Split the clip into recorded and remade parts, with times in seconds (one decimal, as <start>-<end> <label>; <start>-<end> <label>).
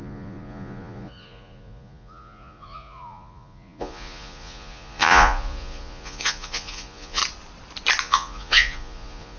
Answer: 0.0-7.2 remade; 7.2-8.0 recorded; 8.0-9.4 remade